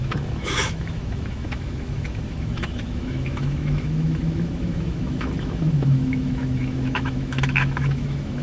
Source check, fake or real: fake